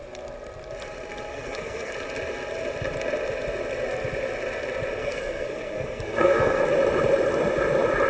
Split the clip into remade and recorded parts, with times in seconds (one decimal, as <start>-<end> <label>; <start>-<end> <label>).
0.0-1.3 recorded; 1.3-1.9 remade; 1.9-5.0 recorded; 5.0-6.6 remade; 6.6-8.1 recorded

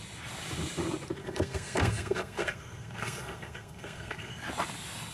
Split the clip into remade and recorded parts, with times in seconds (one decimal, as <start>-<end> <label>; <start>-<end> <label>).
0.0-1.2 recorded; 1.2-4.3 remade; 4.3-5.1 recorded

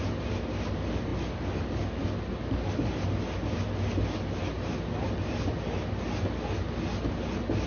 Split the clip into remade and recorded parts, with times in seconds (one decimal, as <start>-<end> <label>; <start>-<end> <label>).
0.0-7.7 recorded

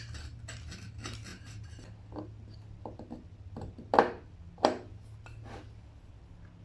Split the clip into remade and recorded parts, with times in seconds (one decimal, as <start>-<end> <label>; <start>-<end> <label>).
0.0-6.6 recorded